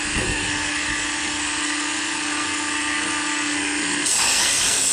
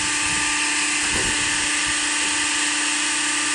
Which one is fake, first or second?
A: first